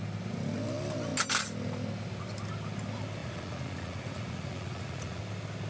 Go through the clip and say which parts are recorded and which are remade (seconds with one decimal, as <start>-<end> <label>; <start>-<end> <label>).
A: 0.0-3.2 recorded; 3.2-5.2 remade; 5.2-5.7 recorded